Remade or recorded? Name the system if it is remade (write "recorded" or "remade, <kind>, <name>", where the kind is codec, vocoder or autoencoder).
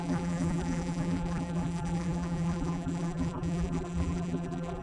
remade, vocoder, BigVGAN v2